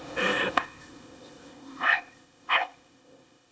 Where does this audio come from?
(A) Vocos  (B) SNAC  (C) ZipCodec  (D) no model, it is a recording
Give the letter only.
C